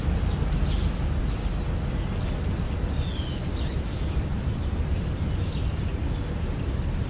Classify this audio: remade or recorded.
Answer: recorded